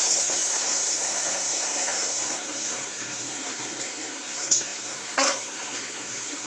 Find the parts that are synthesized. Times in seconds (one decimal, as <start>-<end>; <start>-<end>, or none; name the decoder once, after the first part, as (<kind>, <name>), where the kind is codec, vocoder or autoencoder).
0.0-6.5 (codec, SNAC)